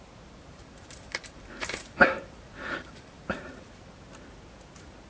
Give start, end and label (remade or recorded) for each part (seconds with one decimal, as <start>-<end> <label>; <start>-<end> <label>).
0.0-0.5 recorded; 0.5-3.6 remade; 3.6-5.1 recorded